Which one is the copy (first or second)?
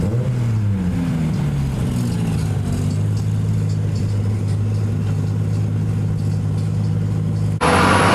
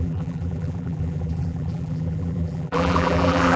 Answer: second